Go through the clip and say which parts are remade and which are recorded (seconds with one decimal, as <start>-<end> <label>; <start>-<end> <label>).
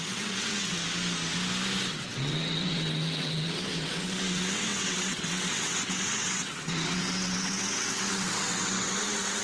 0.0-0.8 remade; 0.8-1.9 recorded; 1.9-9.4 remade